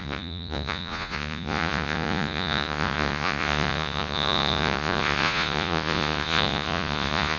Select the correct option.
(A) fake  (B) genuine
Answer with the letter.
A